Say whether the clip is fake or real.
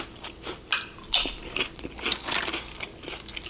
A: real